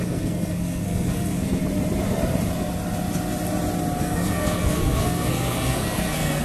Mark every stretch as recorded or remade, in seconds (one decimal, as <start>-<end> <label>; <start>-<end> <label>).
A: 0.0-1.6 remade; 1.6-4.0 recorded; 4.0-6.4 remade